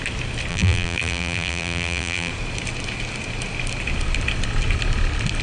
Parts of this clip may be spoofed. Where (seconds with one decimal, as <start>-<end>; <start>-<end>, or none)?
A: 0.5-2.3